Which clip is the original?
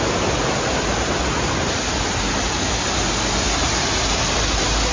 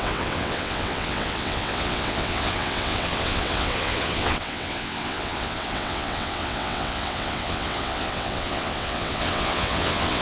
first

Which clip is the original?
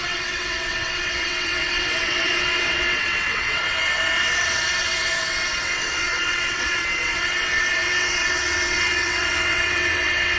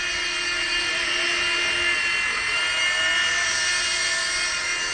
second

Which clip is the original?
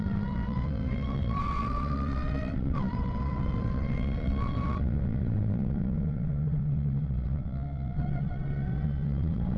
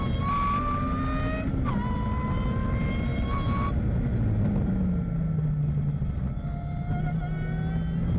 second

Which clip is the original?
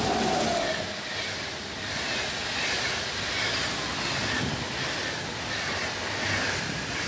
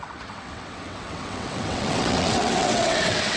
first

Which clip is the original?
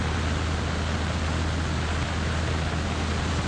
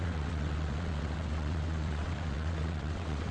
first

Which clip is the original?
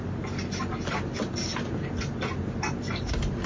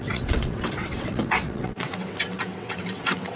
first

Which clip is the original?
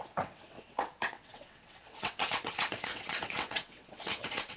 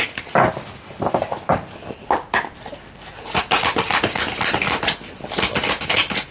second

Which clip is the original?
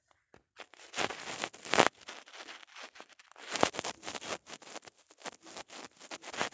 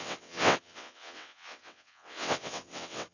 first